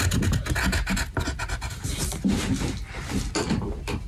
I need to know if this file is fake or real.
real